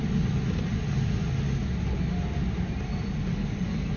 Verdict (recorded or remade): recorded